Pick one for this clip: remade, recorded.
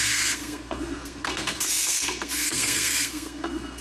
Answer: remade